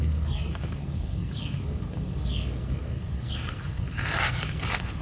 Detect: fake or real fake